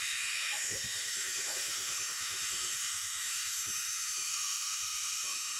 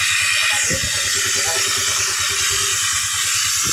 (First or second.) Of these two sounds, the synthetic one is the first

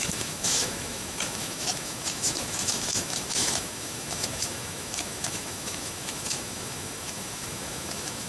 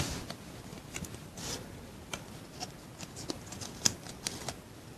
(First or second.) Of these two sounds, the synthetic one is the first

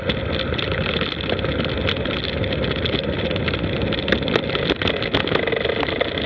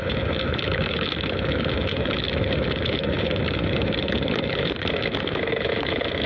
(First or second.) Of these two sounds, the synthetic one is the second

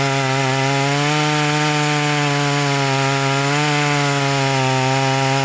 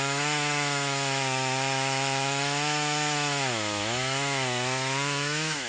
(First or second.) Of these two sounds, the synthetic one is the second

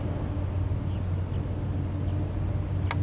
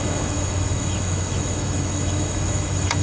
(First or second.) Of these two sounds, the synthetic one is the second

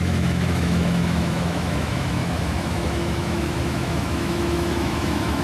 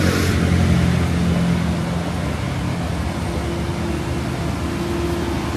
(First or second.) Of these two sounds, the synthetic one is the first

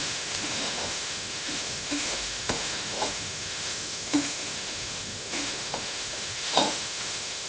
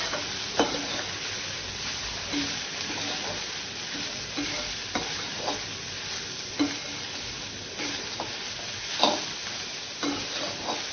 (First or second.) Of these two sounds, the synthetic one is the first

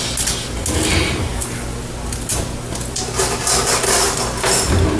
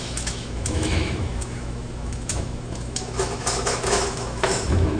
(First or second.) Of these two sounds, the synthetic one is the second